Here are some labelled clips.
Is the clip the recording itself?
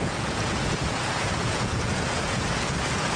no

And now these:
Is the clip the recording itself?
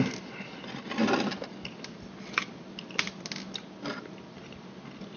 yes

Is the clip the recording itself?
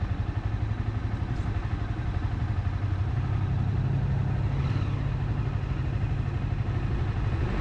yes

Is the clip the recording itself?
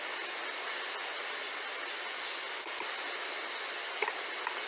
yes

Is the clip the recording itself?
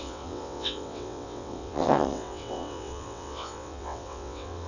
no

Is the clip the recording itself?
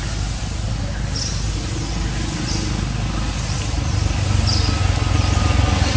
yes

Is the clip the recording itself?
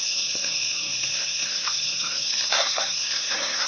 no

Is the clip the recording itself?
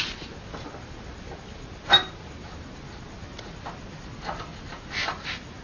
yes